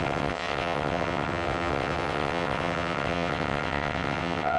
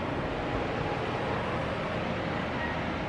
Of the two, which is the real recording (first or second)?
second